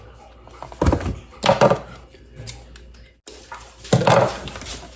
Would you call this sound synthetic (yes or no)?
no